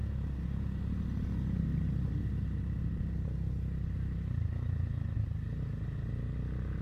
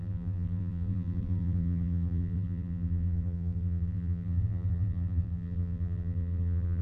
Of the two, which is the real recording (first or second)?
first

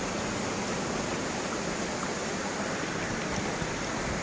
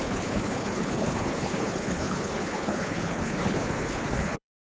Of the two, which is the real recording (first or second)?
first